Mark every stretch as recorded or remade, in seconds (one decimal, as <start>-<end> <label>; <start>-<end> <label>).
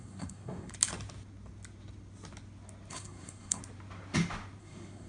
0.0-0.7 remade; 0.7-2.9 recorded; 2.9-3.6 remade; 3.6-4.6 recorded; 4.6-5.1 remade